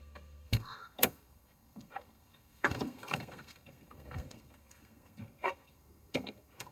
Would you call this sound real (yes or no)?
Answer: no